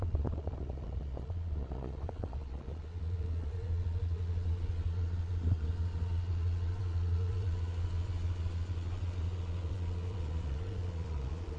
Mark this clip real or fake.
fake